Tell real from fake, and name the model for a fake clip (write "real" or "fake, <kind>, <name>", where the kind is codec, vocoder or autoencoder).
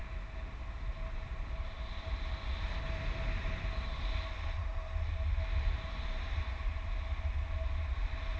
real